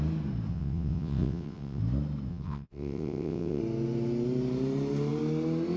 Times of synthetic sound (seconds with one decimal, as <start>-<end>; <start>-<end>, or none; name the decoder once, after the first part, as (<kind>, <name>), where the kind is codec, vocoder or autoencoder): 0.5-1.8 (vocoder, WaveNeXt); 2.3-3.6